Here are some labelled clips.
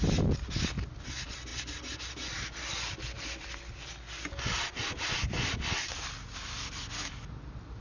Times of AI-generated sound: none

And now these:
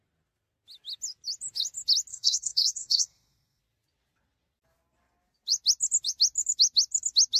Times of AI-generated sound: 2.1-3.6

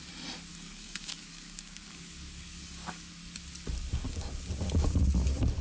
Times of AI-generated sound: 0.5-3.1